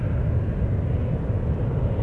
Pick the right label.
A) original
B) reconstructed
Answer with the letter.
A